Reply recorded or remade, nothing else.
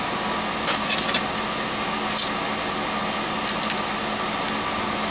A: recorded